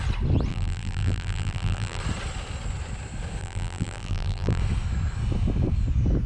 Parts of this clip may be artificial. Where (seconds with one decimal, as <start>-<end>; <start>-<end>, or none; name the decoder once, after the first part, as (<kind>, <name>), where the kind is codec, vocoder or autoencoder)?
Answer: 0.5-2.0 (vocoder, BigVGAN v2); 3.4-4.6